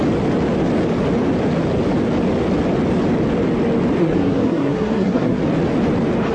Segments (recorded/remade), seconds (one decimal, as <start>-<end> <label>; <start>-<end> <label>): 0.0-4.0 recorded; 4.0-5.4 remade; 5.4-6.3 recorded